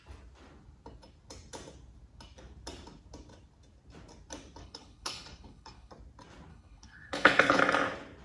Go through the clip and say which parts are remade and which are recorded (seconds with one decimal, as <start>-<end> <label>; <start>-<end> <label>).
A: 0.0-4.6 recorded; 4.6-5.9 remade; 5.9-6.5 recorded; 6.5-7.6 remade; 7.6-8.2 recorded